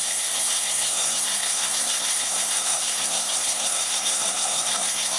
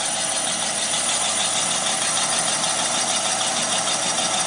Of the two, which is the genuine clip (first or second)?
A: second